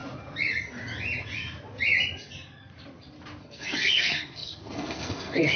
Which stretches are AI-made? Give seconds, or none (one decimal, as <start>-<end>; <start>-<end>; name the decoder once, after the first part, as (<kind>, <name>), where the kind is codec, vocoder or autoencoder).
3.4-5.6 (codec, SNAC)